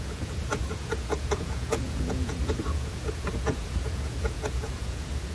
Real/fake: fake